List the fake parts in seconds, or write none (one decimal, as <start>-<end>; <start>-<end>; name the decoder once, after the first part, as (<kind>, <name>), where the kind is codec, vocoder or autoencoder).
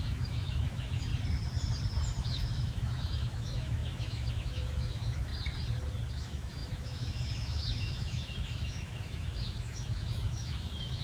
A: 0.0-1.1 (autoencoder, DAC-VAE); 2.2-5.3; 6.1-11.0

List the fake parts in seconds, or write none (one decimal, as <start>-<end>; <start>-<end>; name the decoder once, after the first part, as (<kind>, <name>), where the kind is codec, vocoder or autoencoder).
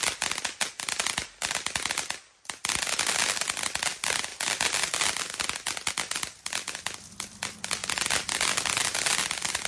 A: none